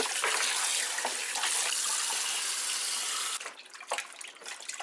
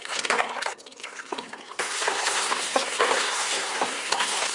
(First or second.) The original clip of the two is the first